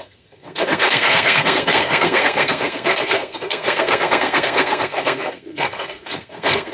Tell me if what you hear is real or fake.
fake